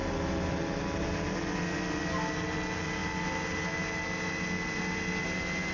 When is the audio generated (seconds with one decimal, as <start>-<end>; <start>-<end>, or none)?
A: none